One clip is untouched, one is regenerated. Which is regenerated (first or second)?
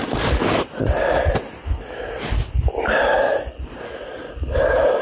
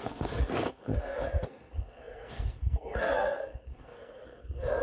second